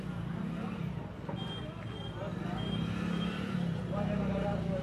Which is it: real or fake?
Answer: real